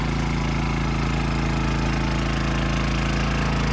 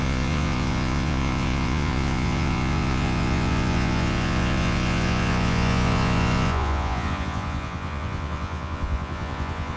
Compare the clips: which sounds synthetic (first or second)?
second